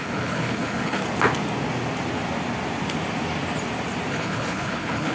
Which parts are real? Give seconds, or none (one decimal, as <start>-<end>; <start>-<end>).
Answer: 1.0-4.1